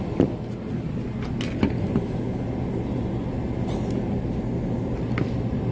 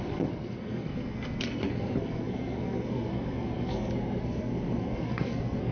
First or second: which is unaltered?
first